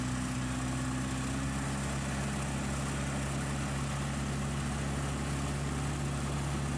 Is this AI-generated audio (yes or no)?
no